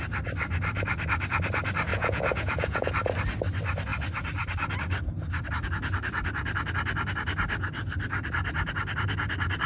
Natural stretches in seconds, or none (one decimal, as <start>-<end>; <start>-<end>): 0.0-1.9; 2.9-9.7